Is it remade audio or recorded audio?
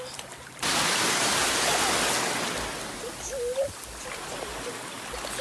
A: recorded